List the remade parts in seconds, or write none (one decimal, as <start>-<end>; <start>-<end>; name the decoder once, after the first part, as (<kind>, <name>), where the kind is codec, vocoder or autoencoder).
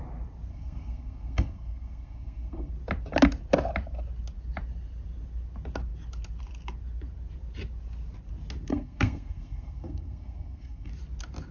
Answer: 0.5-2.7 (codec, SNAC); 8.7-10.9